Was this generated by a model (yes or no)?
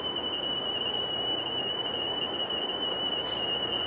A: no